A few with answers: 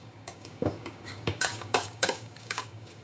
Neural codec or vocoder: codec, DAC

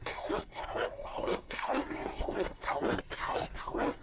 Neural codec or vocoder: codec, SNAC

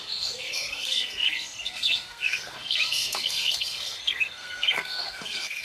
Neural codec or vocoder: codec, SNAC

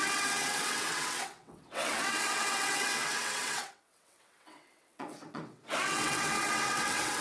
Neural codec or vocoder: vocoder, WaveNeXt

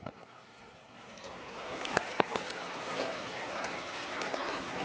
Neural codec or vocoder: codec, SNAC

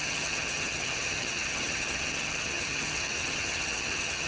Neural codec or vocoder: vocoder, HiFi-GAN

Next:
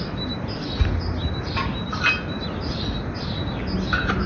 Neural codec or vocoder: none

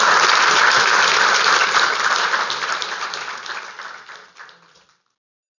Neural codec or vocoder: none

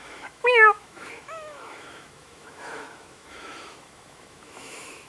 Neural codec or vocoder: autoencoder, DAC-VAE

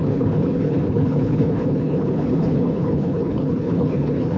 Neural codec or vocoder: codec, HILCodec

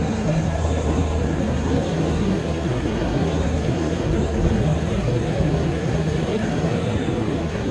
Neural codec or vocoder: codec, SNAC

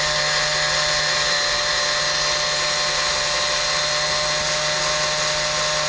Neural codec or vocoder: none